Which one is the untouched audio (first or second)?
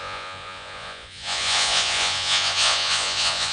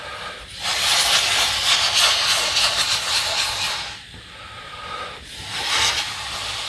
second